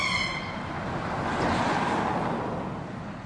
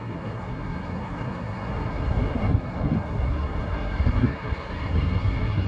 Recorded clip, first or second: first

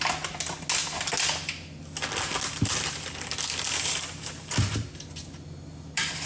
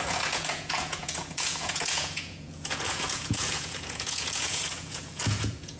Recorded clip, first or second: first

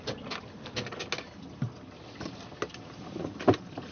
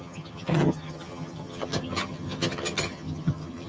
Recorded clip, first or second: first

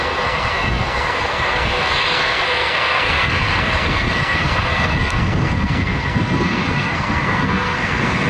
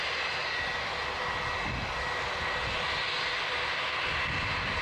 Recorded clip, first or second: second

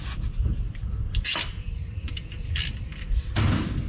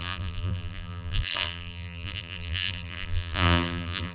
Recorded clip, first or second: first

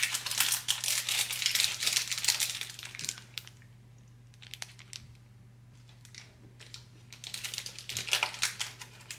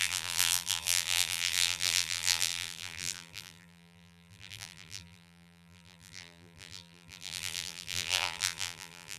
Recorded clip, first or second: first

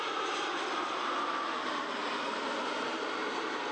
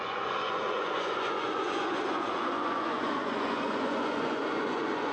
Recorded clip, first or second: first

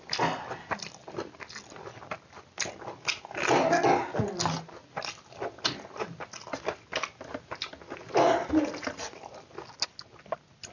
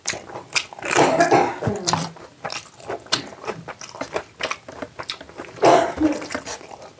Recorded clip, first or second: first